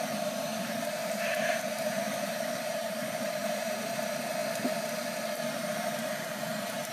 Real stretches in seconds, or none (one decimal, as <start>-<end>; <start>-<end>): 4.4-5.5